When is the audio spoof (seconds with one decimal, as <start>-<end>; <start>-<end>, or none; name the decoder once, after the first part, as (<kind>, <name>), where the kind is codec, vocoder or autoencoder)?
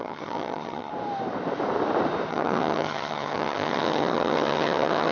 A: 0.0-0.9 (vocoder, HiFi-GAN); 2.3-5.1